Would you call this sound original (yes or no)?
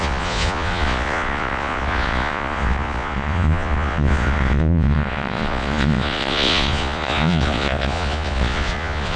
no